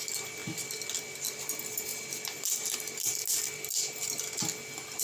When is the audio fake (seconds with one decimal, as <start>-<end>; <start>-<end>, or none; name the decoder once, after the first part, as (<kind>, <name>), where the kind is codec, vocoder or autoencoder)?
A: none